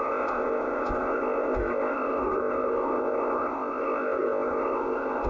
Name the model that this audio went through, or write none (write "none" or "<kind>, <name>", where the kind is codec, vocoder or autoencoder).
codec, ZipCodec